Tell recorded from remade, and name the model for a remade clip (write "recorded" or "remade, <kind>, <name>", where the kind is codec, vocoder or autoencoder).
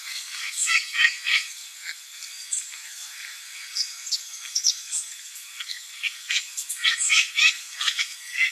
remade, codec, SNAC